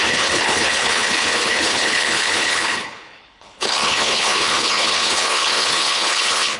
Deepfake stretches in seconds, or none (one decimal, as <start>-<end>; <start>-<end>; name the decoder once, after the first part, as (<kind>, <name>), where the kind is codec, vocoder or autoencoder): 0.0-6.6 (codec, HILCodec)